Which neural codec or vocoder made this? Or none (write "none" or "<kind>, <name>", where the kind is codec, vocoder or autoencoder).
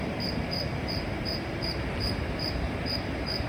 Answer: vocoder, BigVGAN v2